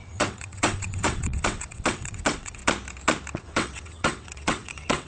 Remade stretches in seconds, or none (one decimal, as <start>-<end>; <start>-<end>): 0.0-2.6; 3.4-5.1